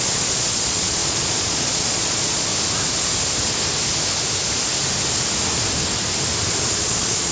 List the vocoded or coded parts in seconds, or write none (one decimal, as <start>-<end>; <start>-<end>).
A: 0.0-2.5; 6.8-7.3